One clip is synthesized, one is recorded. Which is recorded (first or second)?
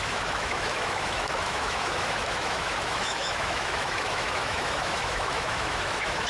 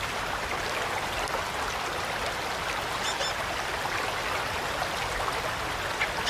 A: second